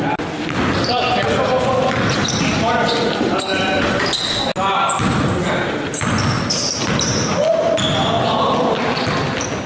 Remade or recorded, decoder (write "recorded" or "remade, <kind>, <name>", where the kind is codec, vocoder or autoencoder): recorded